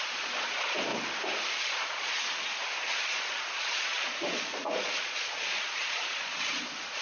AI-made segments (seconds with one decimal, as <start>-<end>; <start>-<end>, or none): 0.0-0.9; 1.5-2.1; 2.8-7.0